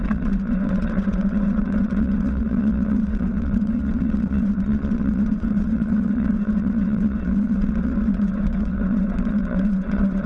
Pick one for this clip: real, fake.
fake